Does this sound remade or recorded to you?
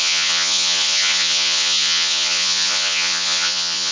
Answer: remade